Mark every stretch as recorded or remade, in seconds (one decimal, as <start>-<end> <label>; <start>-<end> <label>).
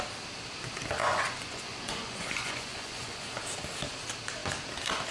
0.0-1.0 recorded; 1.0-3.4 remade; 3.4-5.1 recorded